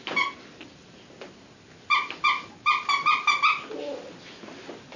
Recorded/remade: recorded